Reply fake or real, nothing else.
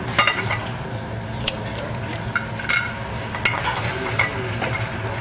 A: real